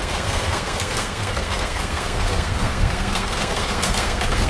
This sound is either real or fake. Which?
fake